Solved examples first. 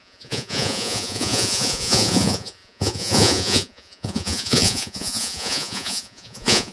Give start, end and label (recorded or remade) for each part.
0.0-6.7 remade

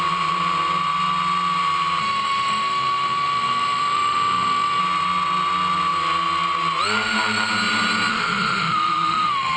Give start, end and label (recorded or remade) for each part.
0.0-2.0 recorded; 2.0-4.8 remade; 4.8-8.1 recorded; 8.1-9.6 remade

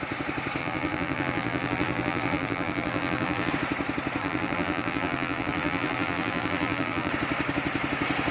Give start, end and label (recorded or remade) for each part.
0.0-0.6 recorded; 0.6-3.5 remade; 3.5-4.2 recorded; 4.2-7.1 remade; 7.1-8.3 recorded

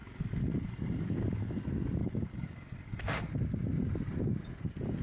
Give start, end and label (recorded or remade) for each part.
0.0-1.6 remade; 1.6-2.0 recorded; 2.0-3.3 remade; 3.3-5.0 recorded

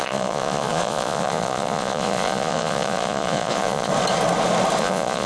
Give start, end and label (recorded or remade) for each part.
0.0-3.9 remade; 3.9-4.8 recorded; 4.8-5.3 remade

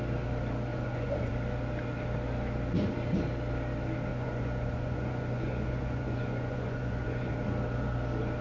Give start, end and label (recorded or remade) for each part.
0.0-0.7 recorded; 0.7-1.3 remade; 1.3-4.1 recorded; 4.1-7.3 remade; 7.3-8.4 recorded